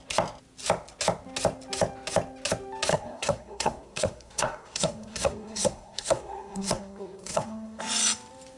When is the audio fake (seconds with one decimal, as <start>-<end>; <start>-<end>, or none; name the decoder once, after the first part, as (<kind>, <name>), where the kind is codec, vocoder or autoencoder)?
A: 2.9-7.8 (codec, SNAC)